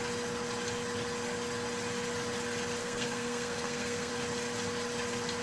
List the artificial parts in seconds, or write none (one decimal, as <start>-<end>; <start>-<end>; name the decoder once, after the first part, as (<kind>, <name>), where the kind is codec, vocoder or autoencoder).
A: 2.8-4.1 (codec, SNAC)